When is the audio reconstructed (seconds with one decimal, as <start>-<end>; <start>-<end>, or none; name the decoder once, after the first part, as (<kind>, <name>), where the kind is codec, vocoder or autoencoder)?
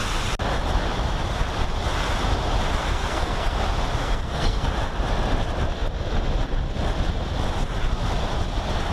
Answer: 2.8-3.6 (codec, SNAC); 4.0-4.7